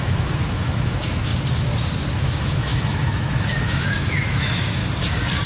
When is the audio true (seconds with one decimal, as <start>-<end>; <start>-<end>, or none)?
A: 1.3-2.1; 4.8-5.5